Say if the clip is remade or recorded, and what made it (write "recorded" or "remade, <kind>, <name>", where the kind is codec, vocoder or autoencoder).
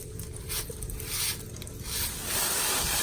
recorded